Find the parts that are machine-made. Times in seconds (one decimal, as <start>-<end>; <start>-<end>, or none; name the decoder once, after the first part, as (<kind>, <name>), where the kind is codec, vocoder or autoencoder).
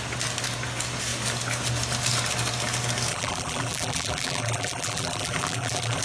3.1-6.0 (vocoder, BigVGAN v2)